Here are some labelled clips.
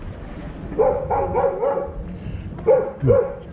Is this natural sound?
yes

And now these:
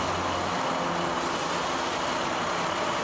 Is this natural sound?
yes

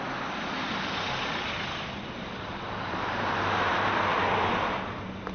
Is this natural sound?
yes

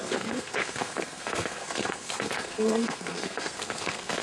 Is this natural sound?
no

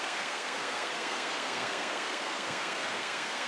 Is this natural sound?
no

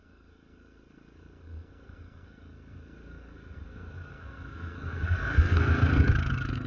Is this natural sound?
no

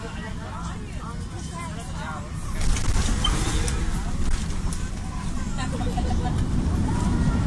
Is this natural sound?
yes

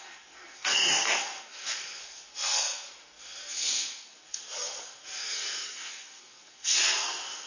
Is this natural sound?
no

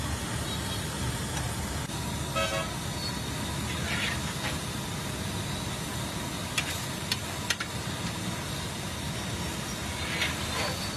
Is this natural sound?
yes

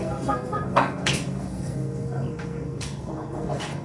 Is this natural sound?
no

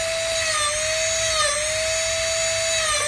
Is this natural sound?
yes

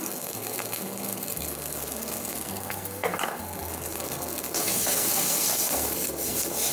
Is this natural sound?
no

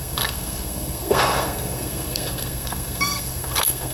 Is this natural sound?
no